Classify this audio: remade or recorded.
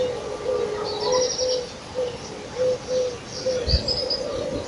recorded